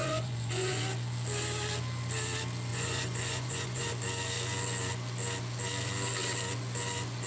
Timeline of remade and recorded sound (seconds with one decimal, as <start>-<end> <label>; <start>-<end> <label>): 0.0-0.8 remade; 0.8-2.7 recorded; 2.7-3.9 remade; 3.9-7.3 recorded